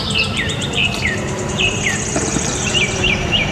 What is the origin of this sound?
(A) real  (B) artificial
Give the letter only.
B